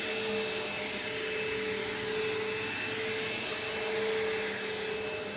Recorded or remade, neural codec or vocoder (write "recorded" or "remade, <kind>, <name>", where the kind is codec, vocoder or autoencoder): recorded